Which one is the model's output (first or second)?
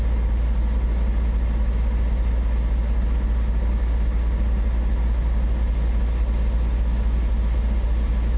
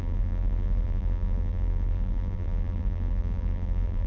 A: second